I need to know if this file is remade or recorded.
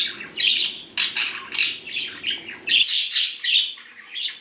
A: recorded